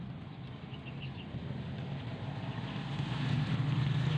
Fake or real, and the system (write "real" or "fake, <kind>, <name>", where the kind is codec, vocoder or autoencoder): real